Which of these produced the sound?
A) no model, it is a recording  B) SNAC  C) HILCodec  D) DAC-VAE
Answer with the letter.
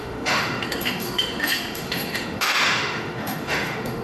D